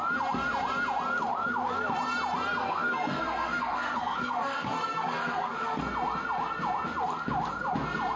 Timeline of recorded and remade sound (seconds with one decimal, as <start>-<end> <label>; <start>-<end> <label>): 0.0-2.6 recorded; 2.6-5.8 remade; 5.8-8.2 recorded